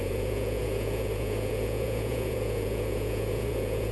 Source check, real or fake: fake